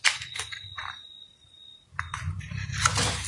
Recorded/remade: recorded